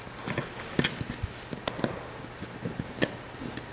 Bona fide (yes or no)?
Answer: yes